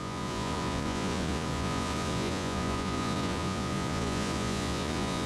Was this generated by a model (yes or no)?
yes